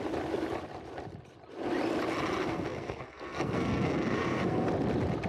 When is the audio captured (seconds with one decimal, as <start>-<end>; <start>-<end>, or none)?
0.0-2.4; 4.7-5.3